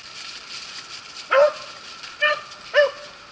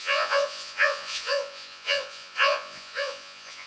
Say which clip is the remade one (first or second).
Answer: second